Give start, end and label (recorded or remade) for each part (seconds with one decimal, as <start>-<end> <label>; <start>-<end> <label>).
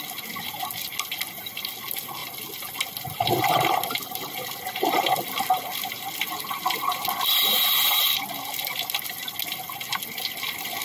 0.0-10.8 recorded